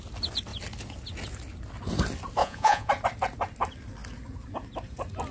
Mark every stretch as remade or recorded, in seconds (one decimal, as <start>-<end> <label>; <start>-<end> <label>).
0.0-2.4 recorded; 2.4-2.9 remade; 2.9-5.3 recorded